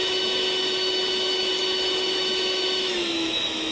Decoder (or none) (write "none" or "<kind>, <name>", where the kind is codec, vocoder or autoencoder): autoencoder, DAC-VAE